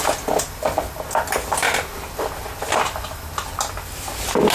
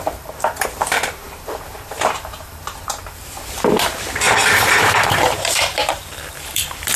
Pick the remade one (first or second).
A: second